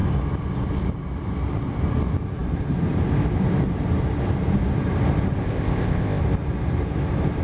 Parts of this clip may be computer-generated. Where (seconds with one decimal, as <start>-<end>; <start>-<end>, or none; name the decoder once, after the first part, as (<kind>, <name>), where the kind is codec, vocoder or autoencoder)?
5.4-6.2 (codec, ZipCodec)